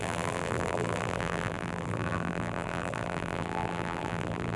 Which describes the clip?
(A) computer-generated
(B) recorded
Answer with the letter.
A